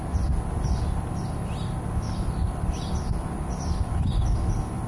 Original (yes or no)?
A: no